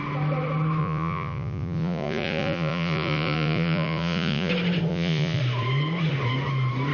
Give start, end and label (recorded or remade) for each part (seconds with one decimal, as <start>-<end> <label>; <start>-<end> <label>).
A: 0.0-0.8 recorded; 0.8-4.5 remade; 4.5-4.9 recorded; 4.9-5.4 remade; 5.4-6.9 recorded